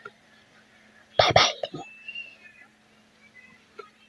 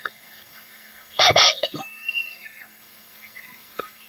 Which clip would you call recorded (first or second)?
first